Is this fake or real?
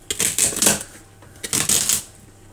real